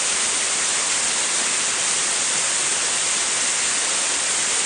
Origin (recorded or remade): recorded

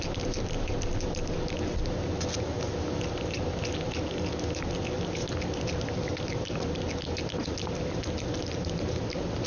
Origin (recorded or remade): recorded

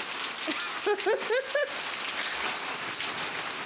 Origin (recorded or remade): recorded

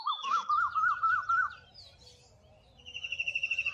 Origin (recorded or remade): recorded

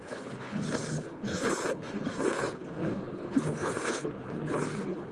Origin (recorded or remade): remade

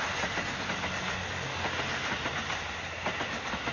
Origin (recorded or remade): recorded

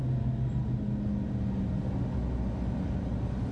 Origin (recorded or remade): recorded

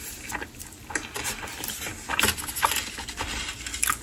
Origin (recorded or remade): recorded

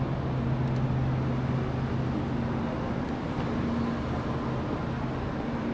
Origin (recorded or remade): recorded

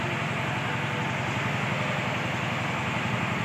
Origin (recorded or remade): recorded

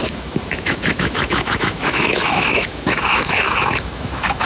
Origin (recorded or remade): remade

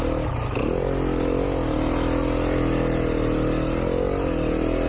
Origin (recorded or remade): recorded